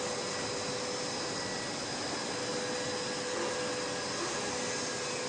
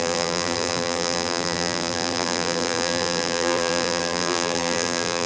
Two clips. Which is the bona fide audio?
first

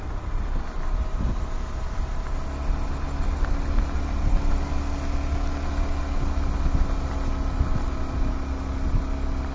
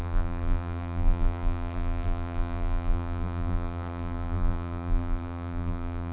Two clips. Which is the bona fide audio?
first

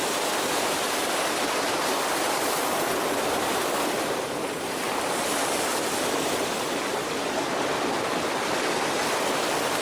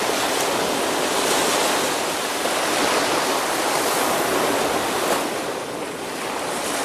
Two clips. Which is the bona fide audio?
second